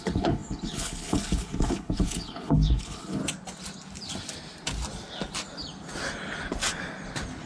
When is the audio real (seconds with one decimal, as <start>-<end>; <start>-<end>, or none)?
3.2-7.5

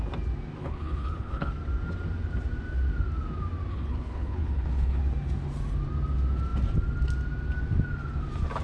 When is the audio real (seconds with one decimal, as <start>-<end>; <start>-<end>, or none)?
0.0-0.6; 1.5-3.7; 5.0-8.6

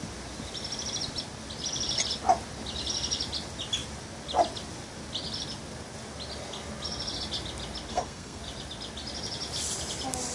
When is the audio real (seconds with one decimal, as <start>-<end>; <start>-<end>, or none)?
0.0-7.9; 8.4-10.3

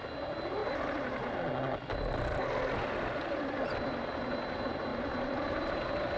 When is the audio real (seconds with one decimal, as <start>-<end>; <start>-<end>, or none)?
0.0-4.9; 5.8-6.2

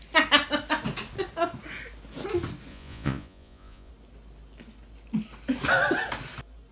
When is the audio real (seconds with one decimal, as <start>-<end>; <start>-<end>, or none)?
0.0-2.7; 3.9-6.7

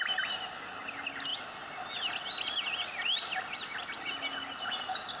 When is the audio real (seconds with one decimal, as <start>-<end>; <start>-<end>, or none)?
0.0-5.2

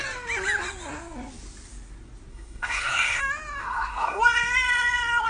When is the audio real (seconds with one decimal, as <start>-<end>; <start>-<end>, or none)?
0.0-2.3; 3.2-3.6; 4.2-5.3